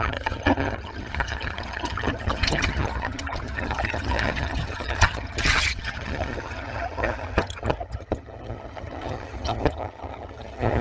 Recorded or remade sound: remade